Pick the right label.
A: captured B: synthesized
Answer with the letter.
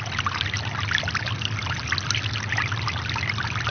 A